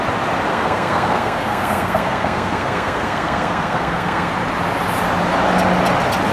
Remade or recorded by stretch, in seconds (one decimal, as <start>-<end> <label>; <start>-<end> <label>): 0.0-0.5 recorded; 0.5-4.3 remade; 4.3-6.3 recorded